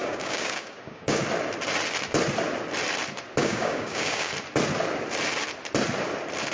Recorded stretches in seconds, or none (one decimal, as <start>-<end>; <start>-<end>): 1.2-3.4; 4.3-6.5